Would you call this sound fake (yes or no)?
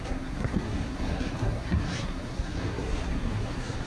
yes